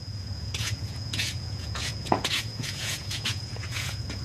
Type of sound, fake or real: fake